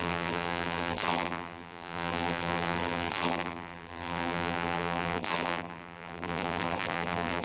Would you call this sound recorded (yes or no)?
no